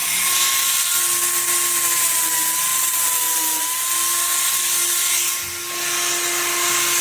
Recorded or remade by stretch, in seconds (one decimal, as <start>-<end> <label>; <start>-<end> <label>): 0.0-0.5 remade; 0.5-7.0 recorded

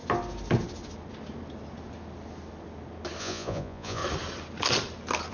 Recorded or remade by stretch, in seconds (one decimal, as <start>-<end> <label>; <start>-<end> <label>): 0.0-3.2 recorded; 3.2-4.0 remade; 4.0-5.3 recorded

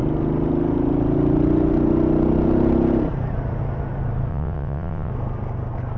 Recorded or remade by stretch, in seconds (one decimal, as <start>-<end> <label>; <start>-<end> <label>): 0.0-4.3 recorded; 4.3-5.1 remade; 5.1-6.0 recorded

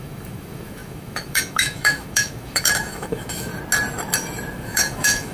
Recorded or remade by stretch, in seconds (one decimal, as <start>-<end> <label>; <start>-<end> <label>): 0.0-3.5 remade; 3.5-4.5 recorded; 4.5-5.3 remade

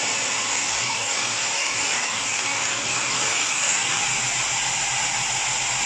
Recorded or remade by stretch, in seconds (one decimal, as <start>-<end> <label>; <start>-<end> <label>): 0.0-0.5 recorded; 0.5-4.0 remade; 4.0-5.9 recorded

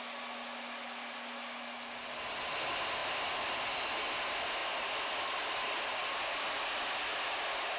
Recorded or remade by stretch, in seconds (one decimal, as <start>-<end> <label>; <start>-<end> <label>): 0.0-7.8 recorded

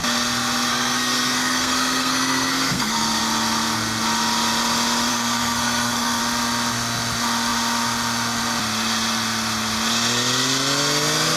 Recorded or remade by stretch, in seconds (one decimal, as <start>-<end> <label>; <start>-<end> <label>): 0.0-0.7 recorded; 0.7-3.2 remade; 3.2-5.1 recorded; 5.1-6.2 remade; 6.2-11.4 recorded